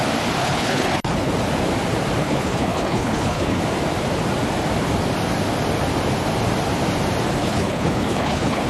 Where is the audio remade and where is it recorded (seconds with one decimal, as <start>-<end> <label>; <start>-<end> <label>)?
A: 0.0-0.4 recorded; 0.4-1.3 remade; 1.3-2.2 recorded; 2.2-3.6 remade; 3.6-7.4 recorded; 7.4-8.7 remade